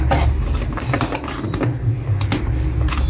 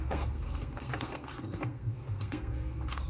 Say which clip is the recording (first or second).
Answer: first